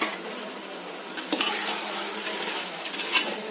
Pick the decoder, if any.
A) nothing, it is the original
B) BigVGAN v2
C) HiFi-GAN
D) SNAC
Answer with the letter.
A